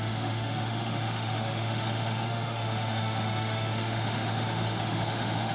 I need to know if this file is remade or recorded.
remade